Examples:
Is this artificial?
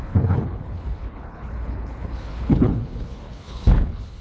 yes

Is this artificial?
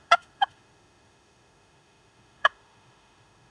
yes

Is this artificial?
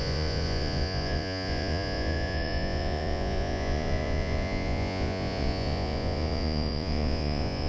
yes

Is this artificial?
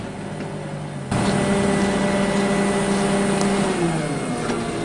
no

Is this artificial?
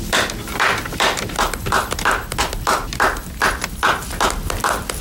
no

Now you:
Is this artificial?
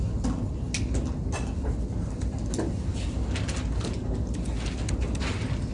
no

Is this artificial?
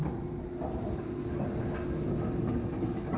no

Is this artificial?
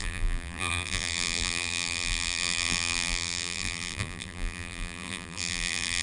yes